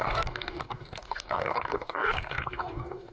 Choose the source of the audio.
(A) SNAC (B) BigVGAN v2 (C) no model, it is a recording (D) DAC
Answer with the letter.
D